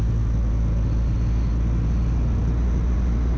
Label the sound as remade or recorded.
recorded